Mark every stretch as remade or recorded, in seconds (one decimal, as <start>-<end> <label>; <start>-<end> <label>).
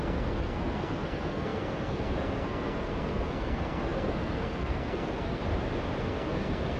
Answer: 0.0-5.4 remade; 5.4-6.0 recorded; 6.0-6.8 remade